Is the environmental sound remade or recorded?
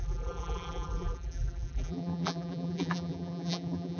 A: remade